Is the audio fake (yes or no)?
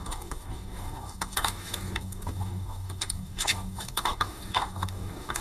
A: yes